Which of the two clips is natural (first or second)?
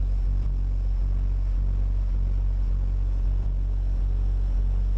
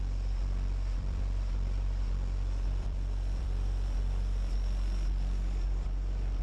first